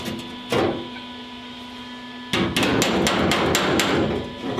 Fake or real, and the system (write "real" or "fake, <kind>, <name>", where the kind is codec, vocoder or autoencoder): real